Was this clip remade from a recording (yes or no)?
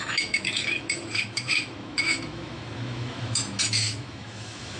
yes